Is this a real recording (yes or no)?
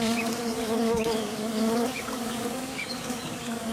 no